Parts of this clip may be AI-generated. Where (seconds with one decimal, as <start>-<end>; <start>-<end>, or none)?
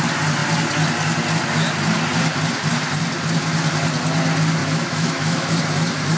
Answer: 4.6-5.5